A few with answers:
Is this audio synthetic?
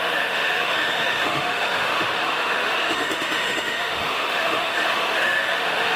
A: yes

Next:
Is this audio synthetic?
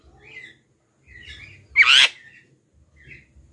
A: no